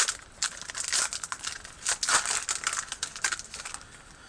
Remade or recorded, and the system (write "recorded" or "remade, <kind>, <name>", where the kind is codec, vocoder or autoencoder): recorded